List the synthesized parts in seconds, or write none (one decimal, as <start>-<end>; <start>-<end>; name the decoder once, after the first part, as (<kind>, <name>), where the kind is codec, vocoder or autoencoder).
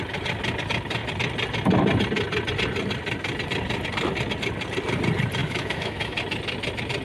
5.4-6.2 (autoencoder, DAC-VAE)